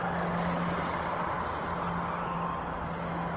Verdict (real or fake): real